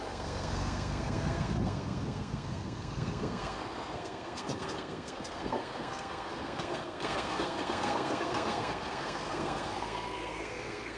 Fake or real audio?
fake